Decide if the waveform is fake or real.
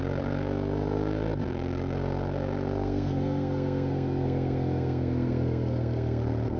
fake